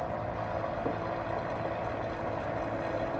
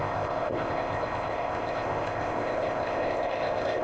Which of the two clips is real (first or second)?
first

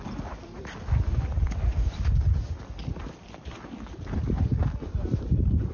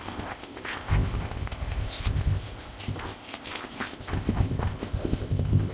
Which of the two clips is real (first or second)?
first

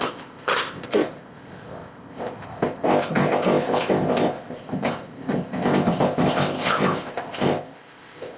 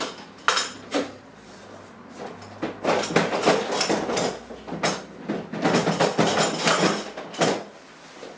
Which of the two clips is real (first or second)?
second